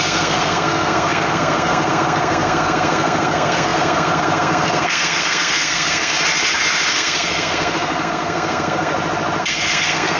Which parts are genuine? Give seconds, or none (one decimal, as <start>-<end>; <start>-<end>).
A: 6.1-6.9; 8.9-9.4